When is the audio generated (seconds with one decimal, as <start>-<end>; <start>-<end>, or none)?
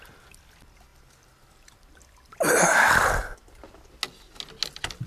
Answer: none